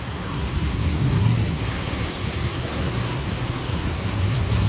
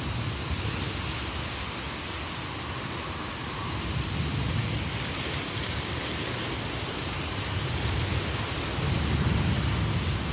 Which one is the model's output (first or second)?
first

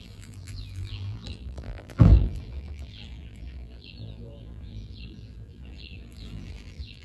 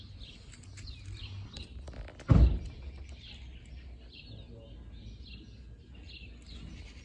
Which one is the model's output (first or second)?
first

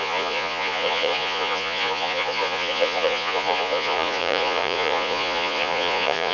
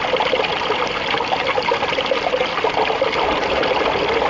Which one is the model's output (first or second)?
first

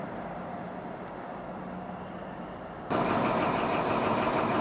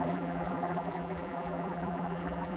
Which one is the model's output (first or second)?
second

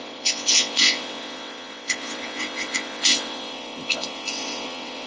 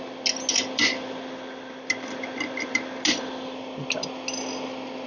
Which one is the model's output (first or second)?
first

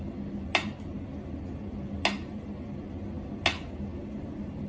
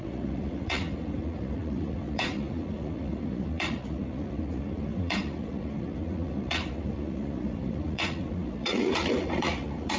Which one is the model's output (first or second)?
second